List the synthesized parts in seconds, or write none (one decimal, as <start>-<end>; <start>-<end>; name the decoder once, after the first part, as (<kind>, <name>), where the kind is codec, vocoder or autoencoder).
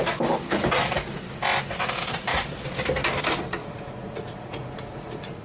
3.6-5.4 (vocoder, Vocos)